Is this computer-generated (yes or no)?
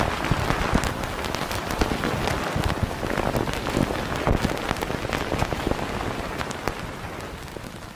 no